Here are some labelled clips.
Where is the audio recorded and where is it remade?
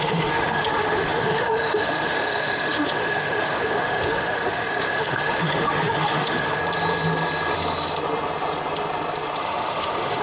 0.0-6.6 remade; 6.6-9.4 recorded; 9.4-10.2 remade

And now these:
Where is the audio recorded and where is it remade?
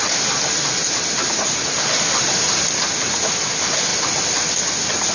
0.0-5.1 recorded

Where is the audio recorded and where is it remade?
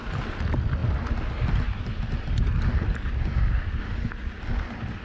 0.0-5.0 recorded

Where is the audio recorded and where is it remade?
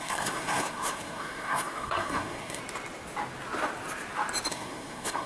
0.0-2.6 remade; 2.6-4.5 recorded; 4.5-5.3 remade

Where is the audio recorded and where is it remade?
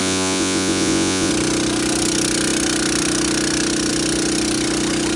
0.0-1.3 remade; 1.3-5.2 recorded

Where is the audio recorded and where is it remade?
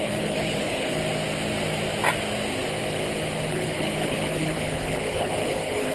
0.0-1.0 remade; 1.0-3.5 recorded; 3.5-5.9 remade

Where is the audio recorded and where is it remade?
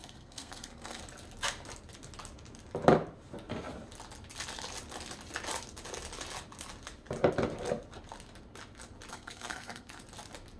0.0-1.0 remade; 1.0-9.1 recorded; 9.1-10.0 remade; 10.0-10.6 recorded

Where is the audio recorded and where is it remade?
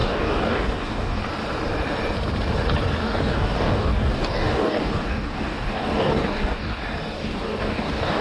0.0-1.2 remade; 1.2-3.0 recorded; 3.0-6.8 remade; 6.8-7.2 recorded; 7.2-8.2 remade